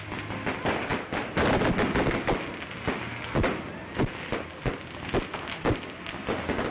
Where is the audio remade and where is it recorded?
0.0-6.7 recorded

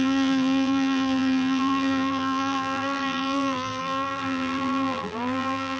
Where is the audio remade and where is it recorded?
0.0-5.8 remade

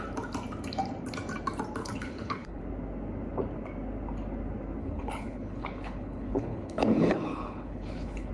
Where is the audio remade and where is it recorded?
0.0-1.8 recorded; 1.8-2.6 remade; 2.6-4.8 recorded; 4.8-8.3 remade

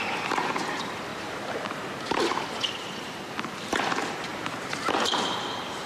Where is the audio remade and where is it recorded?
0.0-1.1 recorded; 1.1-3.2 remade; 3.2-4.3 recorded; 4.3-5.9 remade

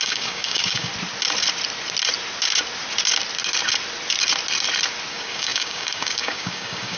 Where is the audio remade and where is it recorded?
0.0-0.9 remade; 0.9-5.1 recorded; 5.1-7.0 remade

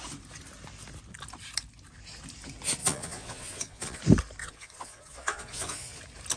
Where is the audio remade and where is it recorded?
0.0-2.8 recorded; 2.8-4.0 remade; 4.0-4.4 recorded; 4.4-6.0 remade; 6.0-6.4 recorded

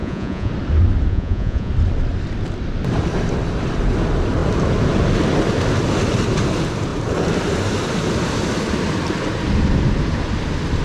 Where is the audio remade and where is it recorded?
0.0-0.5 remade; 0.5-1.1 recorded; 1.1-1.7 remade; 1.7-10.8 recorded

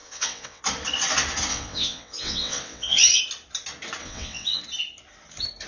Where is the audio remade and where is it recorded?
0.0-0.6 remade; 0.6-1.5 recorded; 1.5-3.2 remade; 3.2-4.0 recorded; 4.0-4.6 remade; 4.6-5.7 recorded